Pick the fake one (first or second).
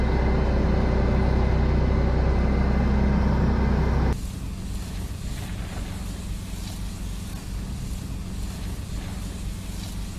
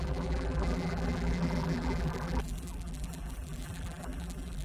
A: second